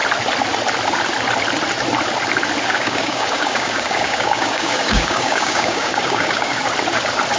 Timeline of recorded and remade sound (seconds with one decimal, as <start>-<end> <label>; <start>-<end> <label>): 0.0-2.6 recorded; 2.6-6.6 remade; 6.6-7.4 recorded

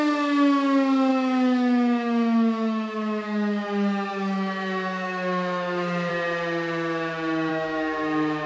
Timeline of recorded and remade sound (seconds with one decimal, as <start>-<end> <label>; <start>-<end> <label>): 0.0-1.1 recorded; 1.1-6.1 remade; 6.1-7.5 recorded; 7.5-8.5 remade

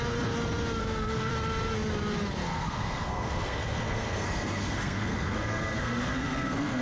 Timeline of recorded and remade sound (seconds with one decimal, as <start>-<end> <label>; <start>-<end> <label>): 0.0-0.8 recorded; 0.8-1.3 remade; 1.3-2.4 recorded; 2.4-6.8 remade

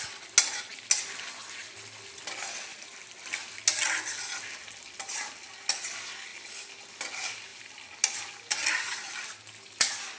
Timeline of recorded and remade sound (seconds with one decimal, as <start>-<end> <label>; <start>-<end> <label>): 0.0-10.2 recorded